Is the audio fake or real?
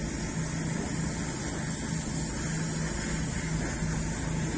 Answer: real